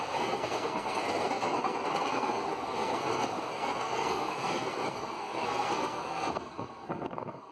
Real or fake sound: fake